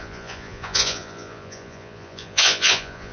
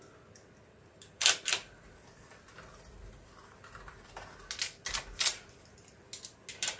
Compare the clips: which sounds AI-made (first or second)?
first